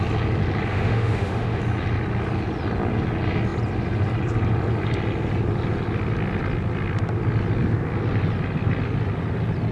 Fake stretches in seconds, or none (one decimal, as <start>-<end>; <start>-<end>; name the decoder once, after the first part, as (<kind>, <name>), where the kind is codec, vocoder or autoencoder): 0.7-1.6 (autoencoder, DAC-VAE)